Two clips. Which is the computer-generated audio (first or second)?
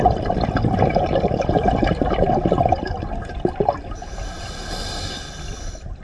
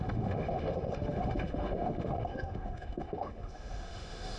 second